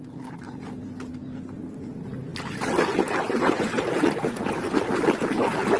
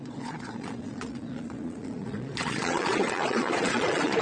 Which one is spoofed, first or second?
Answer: second